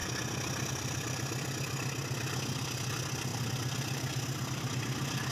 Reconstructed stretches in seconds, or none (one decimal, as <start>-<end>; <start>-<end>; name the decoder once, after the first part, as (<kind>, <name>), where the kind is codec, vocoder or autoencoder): none